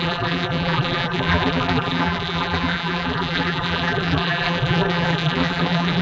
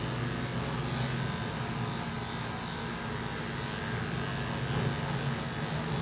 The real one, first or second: second